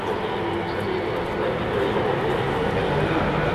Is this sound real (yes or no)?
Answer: yes